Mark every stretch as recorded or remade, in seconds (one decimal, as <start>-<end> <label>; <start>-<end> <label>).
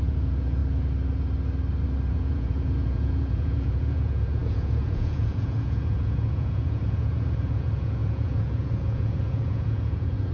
0.0-0.6 remade; 0.6-2.1 recorded; 2.1-10.3 remade